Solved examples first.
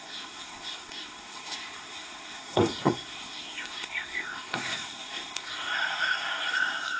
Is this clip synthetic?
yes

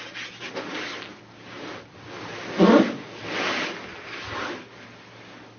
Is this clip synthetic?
no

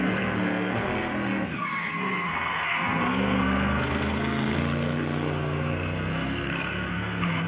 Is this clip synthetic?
yes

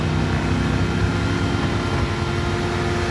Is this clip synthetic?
no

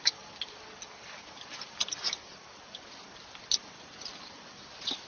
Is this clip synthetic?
no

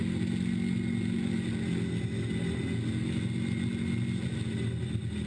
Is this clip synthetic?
no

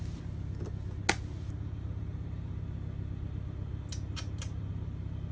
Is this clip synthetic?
no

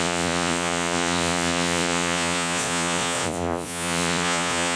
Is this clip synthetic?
yes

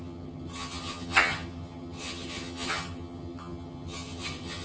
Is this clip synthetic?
yes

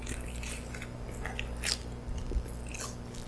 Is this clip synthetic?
no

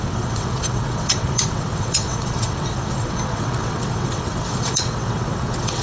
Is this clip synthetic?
yes